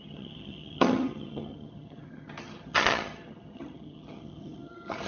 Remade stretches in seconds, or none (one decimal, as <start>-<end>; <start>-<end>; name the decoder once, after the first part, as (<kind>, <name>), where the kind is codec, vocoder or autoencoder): 0.0-5.1 (vocoder, HiFi-GAN)